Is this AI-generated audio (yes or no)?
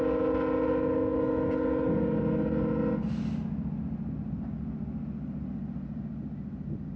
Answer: no